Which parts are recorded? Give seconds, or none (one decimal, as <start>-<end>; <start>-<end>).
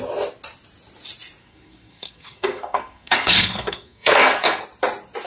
0.0-1.4; 4.6-5.3